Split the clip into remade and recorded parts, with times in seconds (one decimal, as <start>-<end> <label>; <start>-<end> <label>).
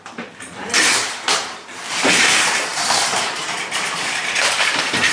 0.0-5.1 remade